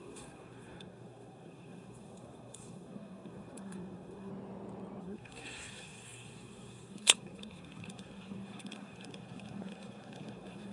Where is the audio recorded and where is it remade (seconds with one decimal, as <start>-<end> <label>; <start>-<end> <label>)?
0.0-4.3 remade; 4.3-5.0 recorded; 5.0-10.7 remade